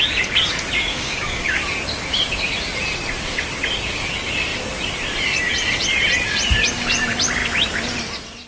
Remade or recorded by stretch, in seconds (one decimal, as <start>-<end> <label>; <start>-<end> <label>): 0.0-0.9 recorded; 0.9-1.6 remade; 1.6-8.5 recorded